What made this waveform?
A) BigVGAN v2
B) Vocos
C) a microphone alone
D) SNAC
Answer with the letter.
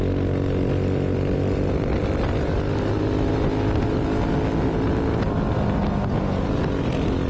C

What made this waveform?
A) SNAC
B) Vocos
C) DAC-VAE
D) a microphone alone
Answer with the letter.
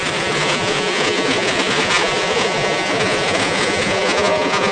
B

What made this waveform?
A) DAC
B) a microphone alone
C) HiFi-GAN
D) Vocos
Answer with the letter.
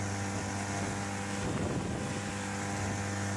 B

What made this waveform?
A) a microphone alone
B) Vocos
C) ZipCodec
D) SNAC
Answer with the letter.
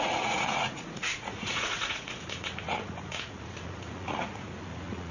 B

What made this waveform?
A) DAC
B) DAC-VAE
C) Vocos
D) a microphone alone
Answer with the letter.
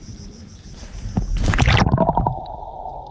D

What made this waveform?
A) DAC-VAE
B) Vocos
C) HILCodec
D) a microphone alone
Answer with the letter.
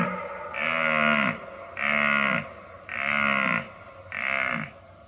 D